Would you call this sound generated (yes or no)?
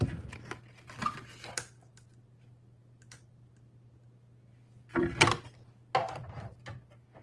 no